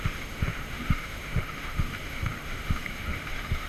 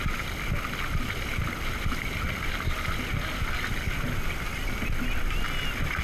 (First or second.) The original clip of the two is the second